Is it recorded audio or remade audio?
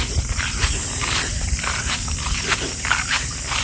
recorded